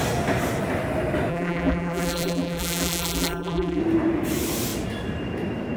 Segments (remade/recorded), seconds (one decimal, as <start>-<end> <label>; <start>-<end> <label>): 0.0-1.3 recorded; 1.3-3.8 remade; 3.8-5.8 recorded

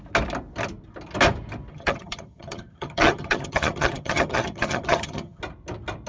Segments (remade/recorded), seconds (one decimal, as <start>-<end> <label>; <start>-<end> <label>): 0.0-1.7 recorded; 1.7-5.4 remade; 5.4-6.1 recorded